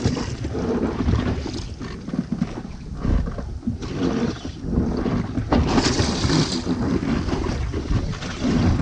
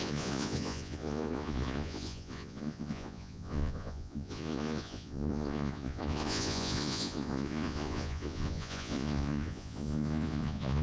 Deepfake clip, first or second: second